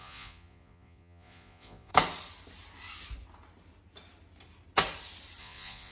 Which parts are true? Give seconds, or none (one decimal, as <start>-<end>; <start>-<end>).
1.9-5.4